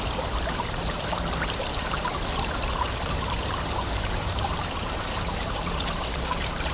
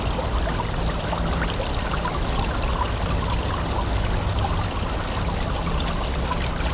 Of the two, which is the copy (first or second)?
first